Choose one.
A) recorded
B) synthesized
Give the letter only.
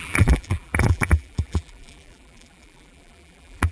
B